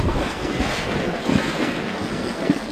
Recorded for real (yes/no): no